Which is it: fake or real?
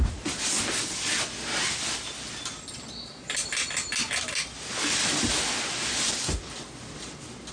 real